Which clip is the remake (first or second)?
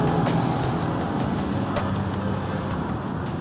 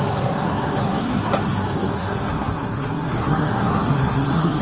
second